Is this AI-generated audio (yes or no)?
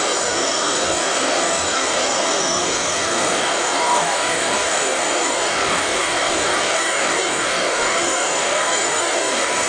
yes